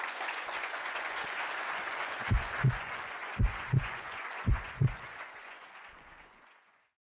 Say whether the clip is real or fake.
fake